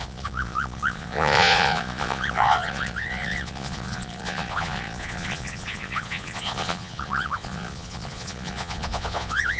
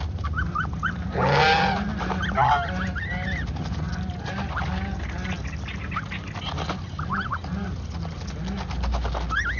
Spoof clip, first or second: first